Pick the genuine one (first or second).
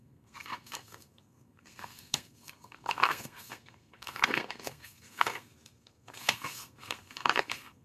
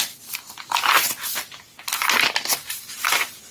second